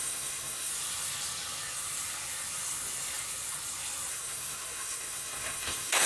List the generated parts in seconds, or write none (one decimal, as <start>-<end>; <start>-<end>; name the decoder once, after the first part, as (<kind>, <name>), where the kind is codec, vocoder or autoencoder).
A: 0.0-0.7 (codec, SNAC); 4.1-6.1